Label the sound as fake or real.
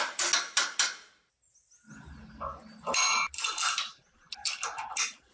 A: real